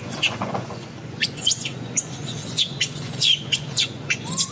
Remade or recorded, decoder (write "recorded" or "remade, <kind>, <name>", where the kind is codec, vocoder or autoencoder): remade, vocoder, Vocos